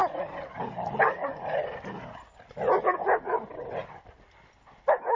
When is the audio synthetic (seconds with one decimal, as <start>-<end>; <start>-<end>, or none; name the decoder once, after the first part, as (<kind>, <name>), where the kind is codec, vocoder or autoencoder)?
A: none